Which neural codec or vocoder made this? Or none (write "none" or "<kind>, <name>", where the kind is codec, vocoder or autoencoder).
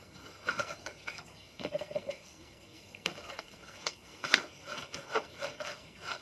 codec, SNAC